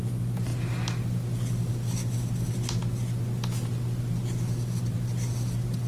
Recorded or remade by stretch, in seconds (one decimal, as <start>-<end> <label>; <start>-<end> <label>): 0.0-5.9 recorded